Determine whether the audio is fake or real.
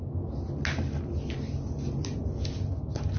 real